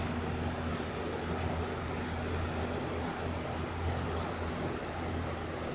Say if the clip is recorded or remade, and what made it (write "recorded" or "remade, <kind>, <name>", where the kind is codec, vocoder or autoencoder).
recorded